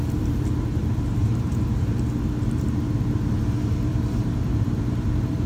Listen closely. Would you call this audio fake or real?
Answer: fake